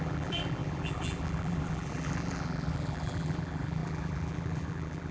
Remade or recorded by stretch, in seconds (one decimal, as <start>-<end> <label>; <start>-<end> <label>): 0.0-5.1 remade

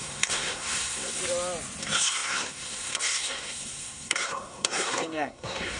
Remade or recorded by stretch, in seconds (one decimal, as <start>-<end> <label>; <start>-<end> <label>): 0.0-1.2 remade; 1.2-1.8 recorded; 1.8-5.8 remade

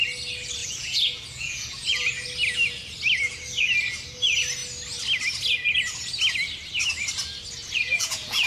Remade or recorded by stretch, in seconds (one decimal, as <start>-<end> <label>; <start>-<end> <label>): 0.0-0.6 recorded; 0.6-2.1 remade; 2.1-7.6 recorded; 7.6-8.5 remade